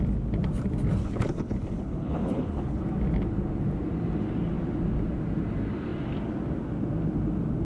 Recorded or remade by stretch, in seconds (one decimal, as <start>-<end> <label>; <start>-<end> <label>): 0.0-1.0 recorded; 1.0-2.8 remade; 2.8-7.6 recorded